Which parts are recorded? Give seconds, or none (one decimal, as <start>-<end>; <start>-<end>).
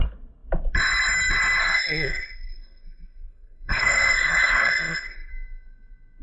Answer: 0.0-1.6; 5.3-6.2